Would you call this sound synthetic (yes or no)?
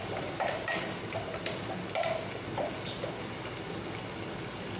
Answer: no